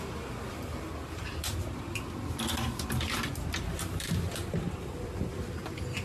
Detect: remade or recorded remade